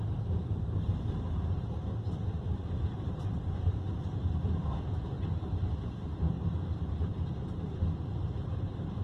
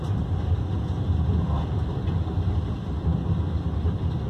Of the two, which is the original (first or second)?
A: second